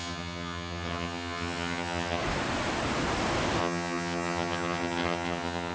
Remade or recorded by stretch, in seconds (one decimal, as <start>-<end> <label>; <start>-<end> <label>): 0.0-2.2 remade; 2.2-3.6 recorded; 3.6-5.7 remade

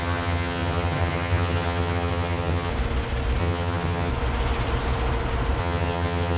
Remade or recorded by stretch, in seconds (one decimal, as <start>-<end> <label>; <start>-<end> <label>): 0.0-2.7 remade; 2.7-3.4 recorded; 3.4-4.1 remade; 4.1-5.6 recorded; 5.6-6.4 remade

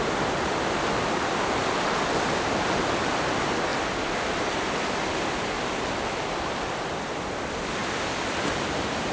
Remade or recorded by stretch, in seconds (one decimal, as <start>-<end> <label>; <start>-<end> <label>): 0.0-9.1 recorded

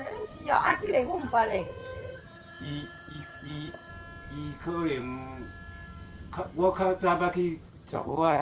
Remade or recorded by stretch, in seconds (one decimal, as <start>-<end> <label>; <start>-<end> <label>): 0.0-3.9 remade; 3.9-7.7 recorded; 7.7-8.4 remade

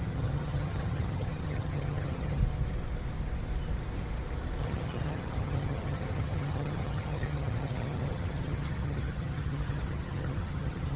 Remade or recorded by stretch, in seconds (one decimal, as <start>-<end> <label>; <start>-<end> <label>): 0.0-2.4 remade; 2.4-4.6 recorded; 4.6-11.0 remade